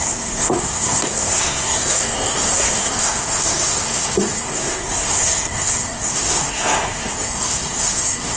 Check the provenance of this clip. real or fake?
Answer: fake